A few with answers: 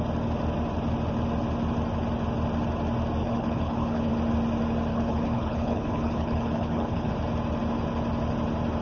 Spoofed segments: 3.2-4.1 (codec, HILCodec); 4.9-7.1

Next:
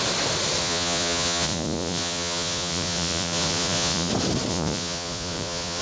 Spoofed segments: 0.6-4.1 (vocoder, Vocos); 4.5-5.8